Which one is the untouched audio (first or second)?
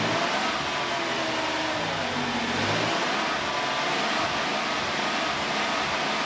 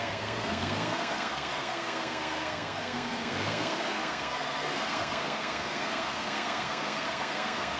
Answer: first